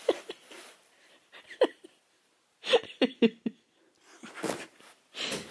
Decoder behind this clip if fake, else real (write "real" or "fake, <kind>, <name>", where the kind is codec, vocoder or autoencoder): real